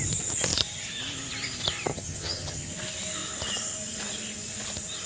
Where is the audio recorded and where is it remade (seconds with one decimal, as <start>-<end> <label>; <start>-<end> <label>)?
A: 0.0-1.9 recorded; 1.9-2.7 remade; 2.7-5.1 recorded